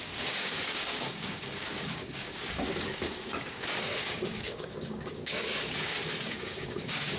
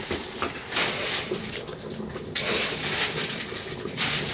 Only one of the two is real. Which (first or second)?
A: second